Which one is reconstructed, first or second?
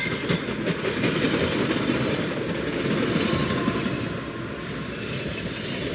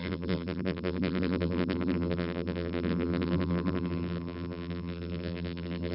second